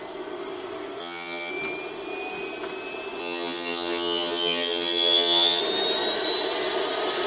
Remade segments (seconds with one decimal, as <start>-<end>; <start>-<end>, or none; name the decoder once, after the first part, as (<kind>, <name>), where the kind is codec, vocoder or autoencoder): 1.0-1.5 (vocoder, HiFi-GAN); 3.2-5.6